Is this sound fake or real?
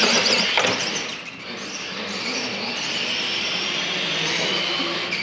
real